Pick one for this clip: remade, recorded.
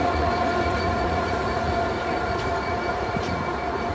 remade